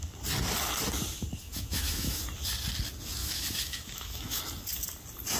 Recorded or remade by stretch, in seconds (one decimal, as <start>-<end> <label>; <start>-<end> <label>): 0.0-1.4 recorded; 1.4-2.2 remade; 2.2-3.2 recorded; 3.2-4.4 remade; 4.4-5.4 recorded